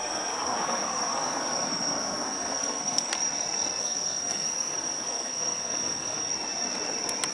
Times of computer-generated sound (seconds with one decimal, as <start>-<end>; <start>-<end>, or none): 0.0-3.1; 3.8-6.3